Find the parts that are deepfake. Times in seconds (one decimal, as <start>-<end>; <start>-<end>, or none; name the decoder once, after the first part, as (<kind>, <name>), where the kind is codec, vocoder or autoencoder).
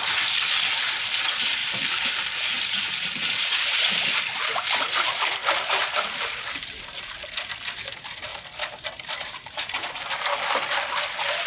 1.6-4.2 (vocoder, BigVGAN v2); 5.4-6.8; 8.3-10.3